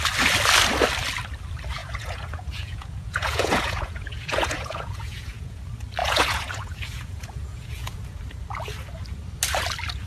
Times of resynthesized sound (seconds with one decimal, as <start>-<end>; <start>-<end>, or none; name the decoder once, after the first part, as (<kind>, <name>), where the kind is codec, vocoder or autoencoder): 1.8-5.6 (vocoder, Vocos); 6.0-8.2